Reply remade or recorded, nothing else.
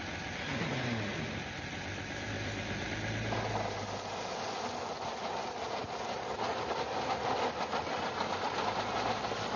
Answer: recorded